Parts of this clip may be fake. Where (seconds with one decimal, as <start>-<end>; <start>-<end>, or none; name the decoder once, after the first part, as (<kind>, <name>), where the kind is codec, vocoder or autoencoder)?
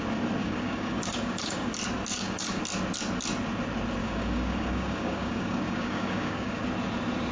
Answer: 0.4-1.7 (codec, DAC); 2.1-2.6; 4.0-6.6